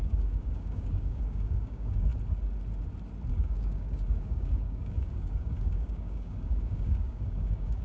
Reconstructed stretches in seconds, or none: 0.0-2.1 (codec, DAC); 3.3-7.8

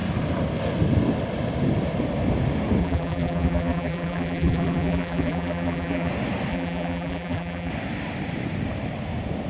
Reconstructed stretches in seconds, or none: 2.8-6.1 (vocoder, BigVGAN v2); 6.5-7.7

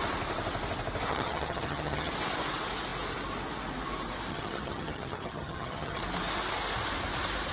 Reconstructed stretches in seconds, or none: 1.1-2.1 (vocoder, HiFi-GAN); 4.3-6.0

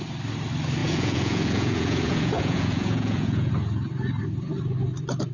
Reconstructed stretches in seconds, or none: 0.8-3.5 (vocoder, Vocos)

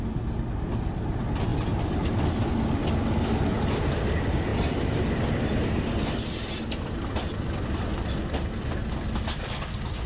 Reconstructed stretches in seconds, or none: 1.5-2.1 (vocoder, BigVGAN v2)